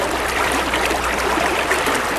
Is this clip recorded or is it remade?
remade